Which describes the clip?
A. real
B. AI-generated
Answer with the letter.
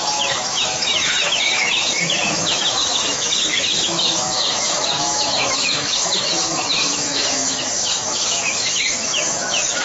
B